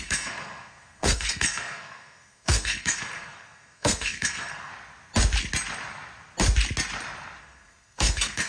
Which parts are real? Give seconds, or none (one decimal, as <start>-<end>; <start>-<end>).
4.7-7.4